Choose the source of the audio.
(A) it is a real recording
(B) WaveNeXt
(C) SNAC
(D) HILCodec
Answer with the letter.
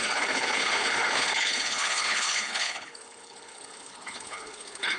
D